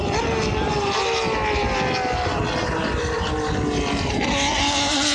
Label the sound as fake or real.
real